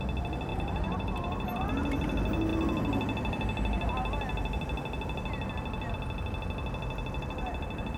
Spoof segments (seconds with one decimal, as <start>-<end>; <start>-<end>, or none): 0.5-1.6